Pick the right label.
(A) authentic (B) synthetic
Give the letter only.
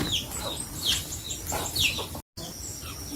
A